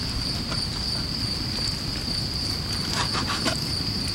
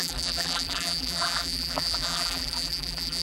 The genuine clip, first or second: first